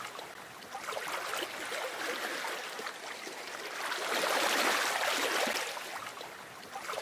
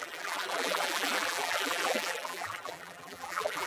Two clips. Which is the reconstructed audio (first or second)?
second